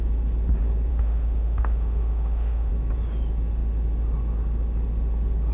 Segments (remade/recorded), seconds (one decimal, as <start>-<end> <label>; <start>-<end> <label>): 0.0-0.9 recorded; 0.9-2.7 remade; 2.7-5.5 recorded